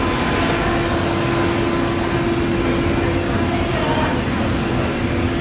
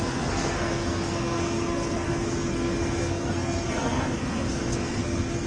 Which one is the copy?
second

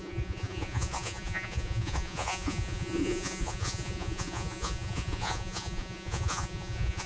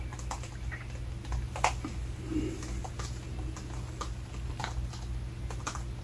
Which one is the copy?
first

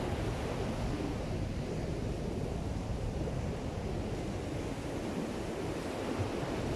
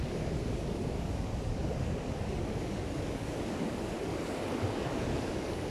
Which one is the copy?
second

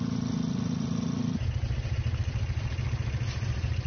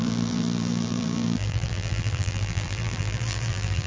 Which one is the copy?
second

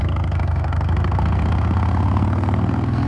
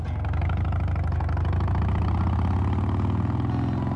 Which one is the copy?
first